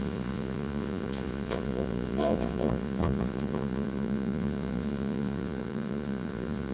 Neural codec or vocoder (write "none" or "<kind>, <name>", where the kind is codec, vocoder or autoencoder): vocoder, Vocos